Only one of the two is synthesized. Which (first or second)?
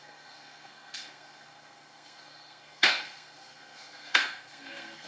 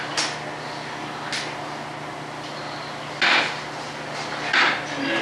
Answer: first